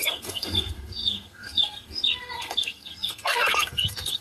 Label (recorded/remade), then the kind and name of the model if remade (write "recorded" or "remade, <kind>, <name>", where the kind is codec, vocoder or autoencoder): remade, codec, SNAC